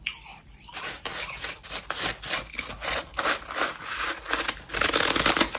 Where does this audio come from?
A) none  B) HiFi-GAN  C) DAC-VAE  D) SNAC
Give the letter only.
A